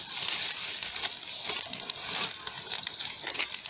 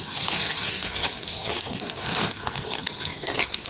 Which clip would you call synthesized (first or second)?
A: second